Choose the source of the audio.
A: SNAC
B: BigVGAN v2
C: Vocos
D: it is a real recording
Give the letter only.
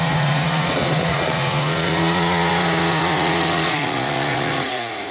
C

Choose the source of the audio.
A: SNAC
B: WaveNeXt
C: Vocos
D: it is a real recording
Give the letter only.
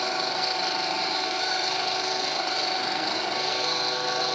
A